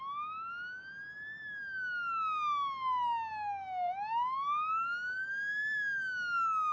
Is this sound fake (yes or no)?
no